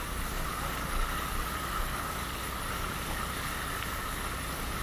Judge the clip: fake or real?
fake